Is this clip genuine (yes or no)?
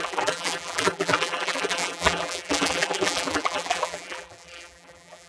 no